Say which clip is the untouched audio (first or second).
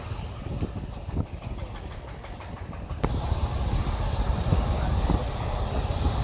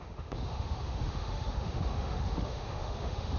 first